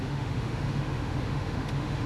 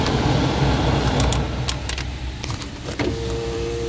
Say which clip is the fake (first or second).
first